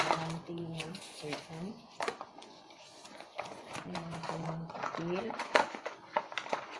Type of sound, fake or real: fake